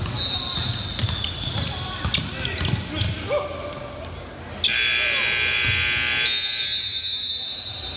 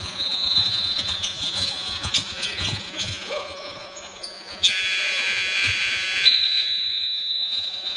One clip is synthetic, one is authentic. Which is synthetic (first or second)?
second